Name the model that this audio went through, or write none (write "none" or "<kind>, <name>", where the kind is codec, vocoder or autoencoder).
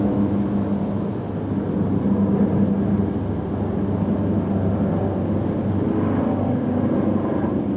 none